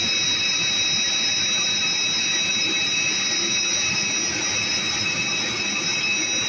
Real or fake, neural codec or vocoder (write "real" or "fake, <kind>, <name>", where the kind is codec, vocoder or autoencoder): real